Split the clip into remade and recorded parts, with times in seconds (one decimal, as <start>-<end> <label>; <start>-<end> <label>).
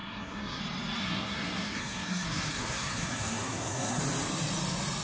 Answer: 0.0-0.6 remade; 0.6-1.0 recorded; 1.0-4.0 remade; 4.0-5.0 recorded